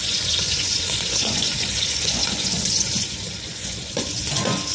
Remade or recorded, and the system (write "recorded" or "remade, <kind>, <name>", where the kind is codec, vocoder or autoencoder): remade, vocoder, Vocos